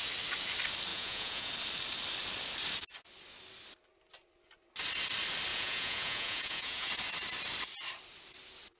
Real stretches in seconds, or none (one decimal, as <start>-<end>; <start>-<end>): 0.0-0.9; 1.5-5.5; 6.9-8.8